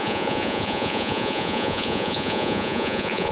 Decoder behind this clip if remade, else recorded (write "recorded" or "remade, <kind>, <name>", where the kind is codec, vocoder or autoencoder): remade, vocoder, Vocos